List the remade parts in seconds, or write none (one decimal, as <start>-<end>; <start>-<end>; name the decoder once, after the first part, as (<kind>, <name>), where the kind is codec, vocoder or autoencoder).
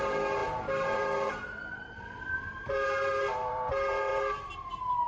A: 0.0-4.1 (vocoder, BigVGAN v2)